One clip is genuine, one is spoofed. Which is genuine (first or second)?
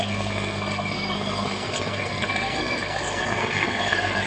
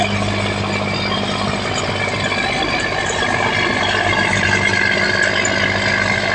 second